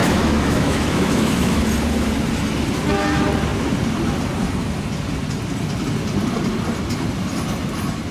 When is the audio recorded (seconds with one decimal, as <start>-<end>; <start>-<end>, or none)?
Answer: 1.6-8.1